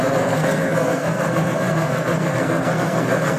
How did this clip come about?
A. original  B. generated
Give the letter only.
B